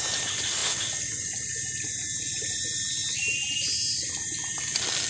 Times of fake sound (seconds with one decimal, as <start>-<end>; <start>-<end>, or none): none